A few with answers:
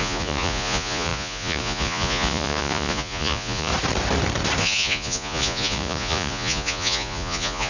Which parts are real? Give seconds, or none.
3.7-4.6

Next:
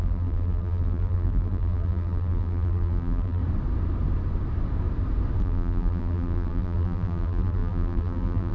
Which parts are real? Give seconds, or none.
3.4-5.4

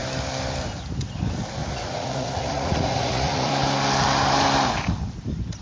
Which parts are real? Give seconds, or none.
0.0-1.6; 3.5-5.6

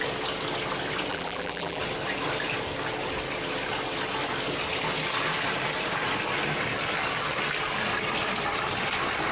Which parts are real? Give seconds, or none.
0.0-1.1; 1.8-9.3

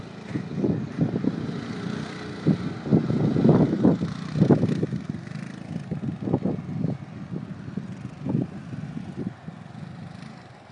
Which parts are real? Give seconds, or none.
0.0-10.7